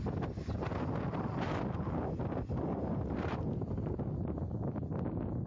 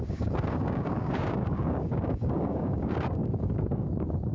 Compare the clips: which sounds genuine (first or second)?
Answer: first